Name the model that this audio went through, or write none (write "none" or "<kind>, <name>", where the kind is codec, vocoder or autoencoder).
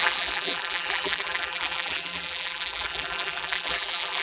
vocoder, BigVGAN v2